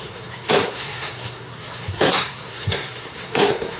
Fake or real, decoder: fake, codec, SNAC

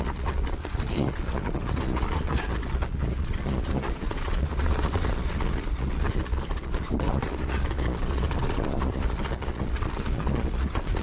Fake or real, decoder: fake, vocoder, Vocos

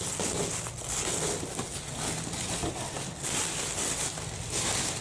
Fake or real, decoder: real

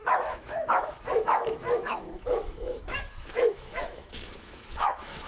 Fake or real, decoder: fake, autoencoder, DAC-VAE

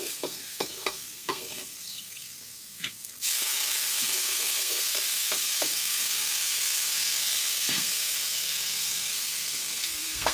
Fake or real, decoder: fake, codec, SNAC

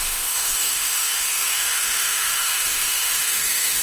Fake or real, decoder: fake, autoencoder, DAC-VAE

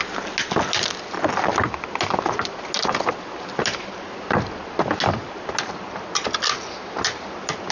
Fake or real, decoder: real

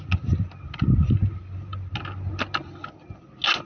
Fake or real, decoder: real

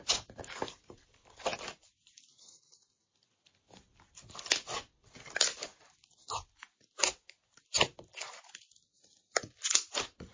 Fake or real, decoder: fake, vocoder, BigVGAN v2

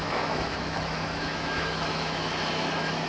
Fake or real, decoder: fake, autoencoder, DAC-VAE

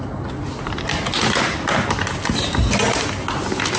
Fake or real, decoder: real